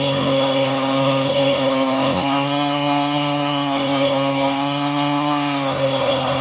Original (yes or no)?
no